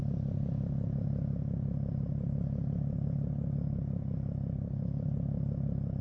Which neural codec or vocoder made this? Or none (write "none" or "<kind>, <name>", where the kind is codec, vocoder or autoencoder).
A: none